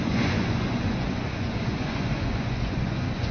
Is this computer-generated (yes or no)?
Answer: yes